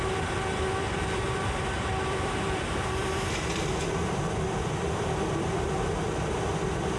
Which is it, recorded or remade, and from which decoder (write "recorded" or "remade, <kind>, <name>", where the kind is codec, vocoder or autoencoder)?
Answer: remade, vocoder, BigVGAN v2